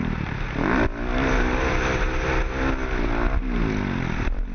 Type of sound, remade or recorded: recorded